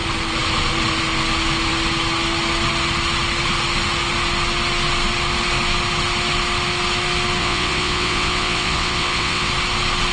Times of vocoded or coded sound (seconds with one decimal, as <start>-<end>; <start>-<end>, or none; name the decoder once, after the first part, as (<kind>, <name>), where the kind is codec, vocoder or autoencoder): 7.4-9.5 (vocoder, WaveNeXt)